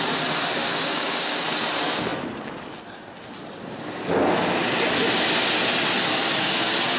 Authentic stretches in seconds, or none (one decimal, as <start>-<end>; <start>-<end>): 0.0-0.6; 1.4-7.0